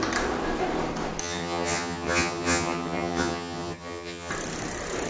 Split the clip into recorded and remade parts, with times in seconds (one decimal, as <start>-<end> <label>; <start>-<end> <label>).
0.0-1.2 recorded; 1.2-4.3 remade; 4.3-5.1 recorded